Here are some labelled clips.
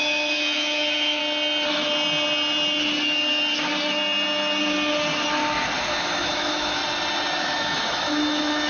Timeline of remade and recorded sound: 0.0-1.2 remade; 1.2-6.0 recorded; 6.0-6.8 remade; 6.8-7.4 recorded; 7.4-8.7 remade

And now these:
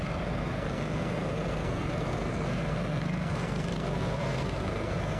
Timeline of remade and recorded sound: 0.0-5.2 remade

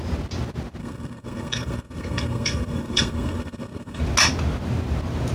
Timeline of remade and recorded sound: 0.0-0.8 recorded; 0.8-4.0 remade; 4.0-5.3 recorded

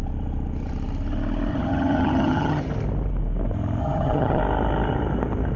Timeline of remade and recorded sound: 0.0-1.5 recorded; 1.5-2.6 remade; 2.6-3.8 recorded; 3.8-4.4 remade; 4.4-5.6 recorded

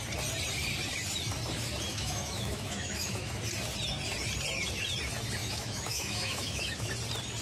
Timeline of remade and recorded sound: 0.0-1.9 recorded; 1.9-3.4 remade; 3.4-5.4 recorded; 5.4-6.9 remade; 6.9-7.4 recorded

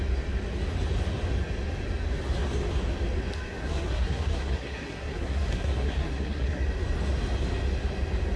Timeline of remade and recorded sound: 0.0-3.6 recorded; 3.6-6.6 remade; 6.6-8.4 recorded

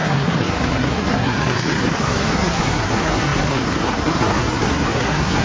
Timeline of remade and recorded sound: 0.0-5.4 remade

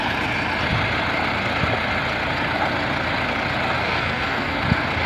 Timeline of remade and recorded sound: 0.0-3.8 recorded; 3.8-4.6 remade; 4.6-5.1 recorded